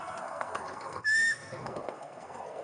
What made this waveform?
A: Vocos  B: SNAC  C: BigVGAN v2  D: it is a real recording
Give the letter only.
B